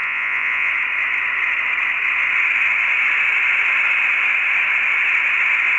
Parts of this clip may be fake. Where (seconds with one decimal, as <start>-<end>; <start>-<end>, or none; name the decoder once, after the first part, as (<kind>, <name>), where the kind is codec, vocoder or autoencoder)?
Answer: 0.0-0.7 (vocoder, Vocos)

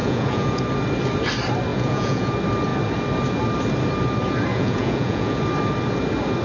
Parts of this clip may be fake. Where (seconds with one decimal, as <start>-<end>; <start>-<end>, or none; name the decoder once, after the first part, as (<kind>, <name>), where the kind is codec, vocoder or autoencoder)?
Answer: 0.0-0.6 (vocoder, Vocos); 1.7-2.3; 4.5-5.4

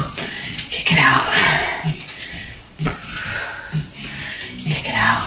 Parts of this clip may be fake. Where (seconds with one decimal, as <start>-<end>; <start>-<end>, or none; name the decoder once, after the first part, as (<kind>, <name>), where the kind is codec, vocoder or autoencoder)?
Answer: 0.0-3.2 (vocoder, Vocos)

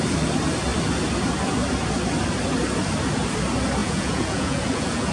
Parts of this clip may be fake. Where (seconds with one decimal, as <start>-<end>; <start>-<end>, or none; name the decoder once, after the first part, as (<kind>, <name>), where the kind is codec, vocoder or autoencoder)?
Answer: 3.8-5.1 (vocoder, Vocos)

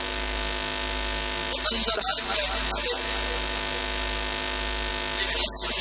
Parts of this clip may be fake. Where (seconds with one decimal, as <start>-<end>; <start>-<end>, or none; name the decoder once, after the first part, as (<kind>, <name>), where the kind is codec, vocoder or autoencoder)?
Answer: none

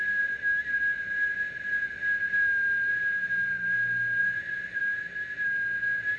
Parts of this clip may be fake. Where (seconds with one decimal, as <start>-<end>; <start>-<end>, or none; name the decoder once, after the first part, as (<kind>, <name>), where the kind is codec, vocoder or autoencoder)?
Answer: 4.2-4.8 (vocoder, Vocos)

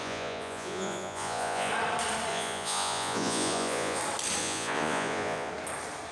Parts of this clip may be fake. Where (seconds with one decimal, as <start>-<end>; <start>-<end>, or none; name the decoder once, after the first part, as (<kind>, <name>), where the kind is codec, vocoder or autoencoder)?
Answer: 0.0-1.7 (vocoder, Vocos); 2.3-4.0; 4.4-5.5

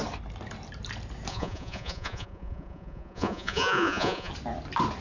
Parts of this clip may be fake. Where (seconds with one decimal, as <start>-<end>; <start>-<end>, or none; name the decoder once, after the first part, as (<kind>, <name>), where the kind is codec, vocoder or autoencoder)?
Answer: 1.3-4.3 (vocoder, Vocos)